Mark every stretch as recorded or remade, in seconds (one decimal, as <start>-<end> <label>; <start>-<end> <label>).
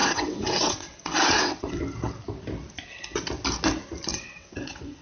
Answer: 0.0-1.8 remade; 1.8-4.1 recorded; 4.1-5.0 remade